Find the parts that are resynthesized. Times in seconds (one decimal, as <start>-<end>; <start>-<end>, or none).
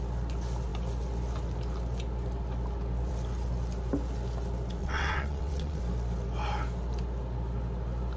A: 4.8-5.8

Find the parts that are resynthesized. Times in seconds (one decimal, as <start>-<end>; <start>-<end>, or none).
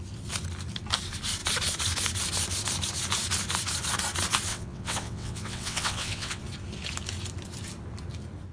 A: 4.5-6.4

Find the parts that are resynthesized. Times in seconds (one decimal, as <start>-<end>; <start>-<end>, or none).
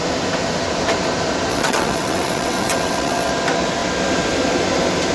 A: 1.5-3.3